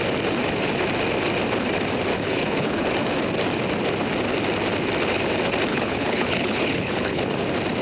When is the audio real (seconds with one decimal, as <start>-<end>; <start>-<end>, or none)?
0.0-2.1; 2.9-5.7; 7.2-7.8